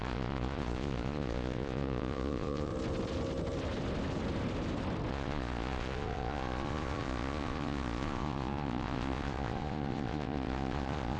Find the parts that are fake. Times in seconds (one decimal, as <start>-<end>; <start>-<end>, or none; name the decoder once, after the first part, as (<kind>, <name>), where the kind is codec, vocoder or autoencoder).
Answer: 0.0-2.7 (vocoder, Vocos); 5.1-11.2

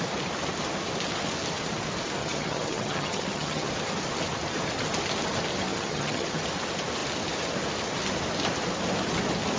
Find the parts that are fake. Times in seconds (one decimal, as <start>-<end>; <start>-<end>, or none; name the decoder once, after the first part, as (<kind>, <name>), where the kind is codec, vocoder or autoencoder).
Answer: 2.2-3.7 (vocoder, HiFi-GAN); 5.7-6.3

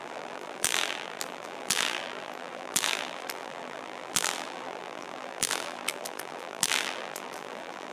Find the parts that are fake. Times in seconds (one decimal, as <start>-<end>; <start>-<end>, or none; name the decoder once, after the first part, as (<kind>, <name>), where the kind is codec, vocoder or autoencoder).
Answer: 0.0-7.9 (vocoder, BigVGAN v2)

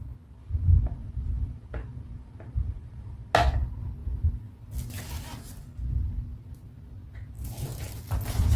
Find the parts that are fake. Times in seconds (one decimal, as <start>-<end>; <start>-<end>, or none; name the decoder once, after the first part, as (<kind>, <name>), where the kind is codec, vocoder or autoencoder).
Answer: 0.4-3.2 (vocoder, BigVGAN v2)

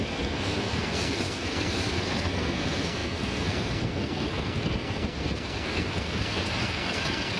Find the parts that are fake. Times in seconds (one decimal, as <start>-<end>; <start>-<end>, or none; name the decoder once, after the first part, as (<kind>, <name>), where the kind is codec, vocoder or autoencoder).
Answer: 0.0-7.4 (codec, SNAC)